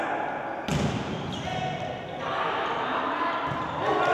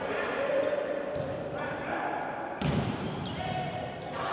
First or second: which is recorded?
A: first